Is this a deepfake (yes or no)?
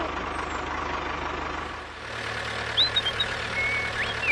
no